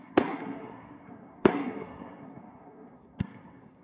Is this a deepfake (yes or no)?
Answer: yes